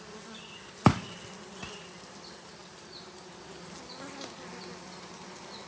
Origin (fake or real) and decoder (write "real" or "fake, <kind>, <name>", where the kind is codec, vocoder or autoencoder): real